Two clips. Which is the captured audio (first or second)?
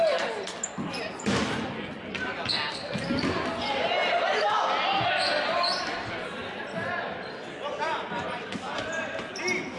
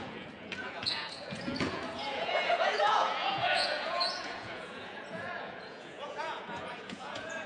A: first